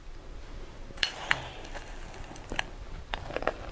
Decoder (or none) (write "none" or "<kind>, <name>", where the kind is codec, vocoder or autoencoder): none